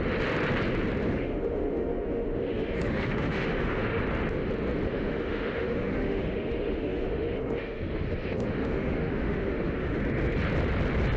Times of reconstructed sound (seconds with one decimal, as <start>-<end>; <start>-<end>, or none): 1.0-4.0; 4.9-10.0